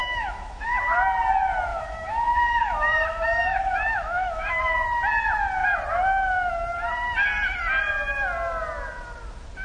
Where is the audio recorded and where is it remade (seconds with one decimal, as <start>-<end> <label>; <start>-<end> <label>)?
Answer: 0.0-0.8 remade; 0.8-1.7 recorded; 1.7-4.6 remade; 4.6-9.6 recorded